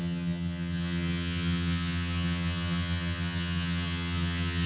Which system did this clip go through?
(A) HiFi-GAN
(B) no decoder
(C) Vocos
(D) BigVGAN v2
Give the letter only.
A